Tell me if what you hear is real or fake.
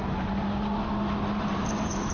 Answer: real